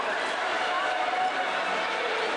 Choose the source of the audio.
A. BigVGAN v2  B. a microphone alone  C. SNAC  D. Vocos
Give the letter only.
B